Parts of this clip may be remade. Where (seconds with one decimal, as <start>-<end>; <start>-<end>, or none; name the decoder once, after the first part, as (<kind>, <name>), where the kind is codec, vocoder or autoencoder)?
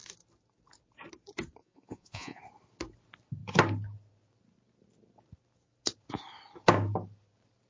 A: 1.6-2.4 (vocoder, Vocos)